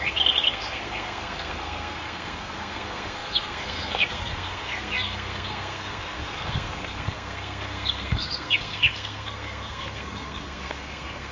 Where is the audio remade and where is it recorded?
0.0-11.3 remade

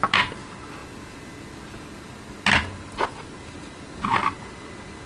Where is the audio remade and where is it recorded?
0.0-5.1 recorded

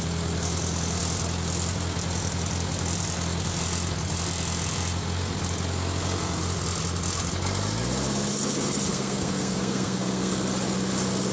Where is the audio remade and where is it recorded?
0.0-8.9 recorded; 8.9-10.3 remade; 10.3-11.3 recorded

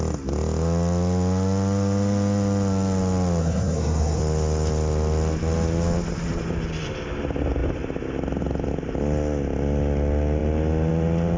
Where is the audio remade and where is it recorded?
0.0-3.4 recorded; 3.4-4.2 remade; 4.2-11.4 recorded

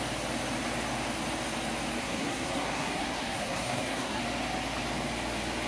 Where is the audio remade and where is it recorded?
0.0-2.0 recorded; 2.0-4.2 remade; 4.2-5.7 recorded

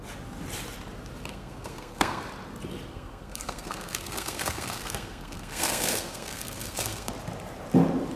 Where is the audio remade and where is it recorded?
0.0-1.3 recorded; 1.3-2.2 remade; 2.2-2.9 recorded; 2.9-7.1 remade; 7.1-8.2 recorded